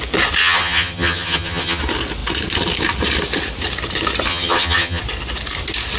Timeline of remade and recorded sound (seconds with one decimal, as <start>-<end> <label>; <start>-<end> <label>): 0.0-0.4 recorded; 0.4-1.8 remade; 1.8-4.3 recorded; 4.3-5.0 remade; 5.0-6.0 recorded

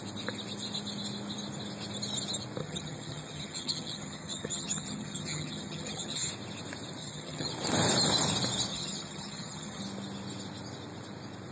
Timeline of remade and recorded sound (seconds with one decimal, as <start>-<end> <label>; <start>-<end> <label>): 0.0-2.6 recorded; 2.6-6.3 remade; 6.3-7.0 recorded; 7.0-7.5 remade; 7.5-8.7 recorded; 8.7-9.8 remade; 9.8-11.5 recorded

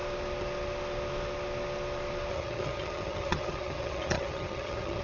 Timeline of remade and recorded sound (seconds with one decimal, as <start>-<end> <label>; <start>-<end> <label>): 0.0-2.3 recorded; 2.3-5.0 remade